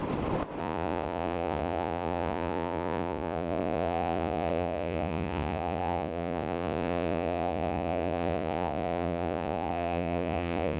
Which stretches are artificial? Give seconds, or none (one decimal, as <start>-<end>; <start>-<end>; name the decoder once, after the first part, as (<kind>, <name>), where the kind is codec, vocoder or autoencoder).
0.6-10.8 (vocoder, Vocos)